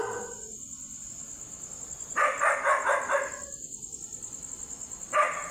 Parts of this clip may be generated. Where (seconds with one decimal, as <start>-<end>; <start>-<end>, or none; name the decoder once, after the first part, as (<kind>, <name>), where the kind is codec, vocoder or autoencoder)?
none